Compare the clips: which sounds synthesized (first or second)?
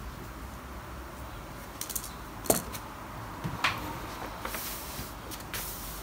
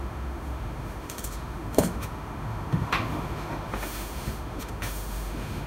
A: second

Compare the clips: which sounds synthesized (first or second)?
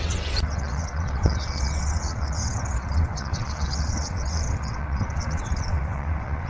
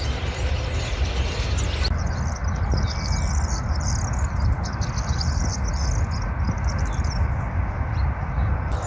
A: first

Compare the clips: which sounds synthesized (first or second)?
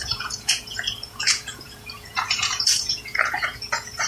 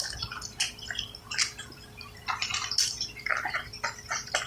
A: first